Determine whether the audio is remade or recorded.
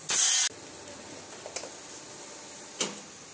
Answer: recorded